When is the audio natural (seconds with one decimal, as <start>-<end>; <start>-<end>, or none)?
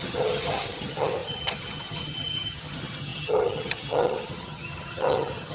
none